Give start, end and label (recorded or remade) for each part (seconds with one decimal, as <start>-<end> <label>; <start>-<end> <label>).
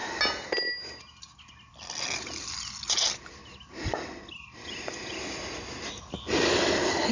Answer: 0.0-7.1 recorded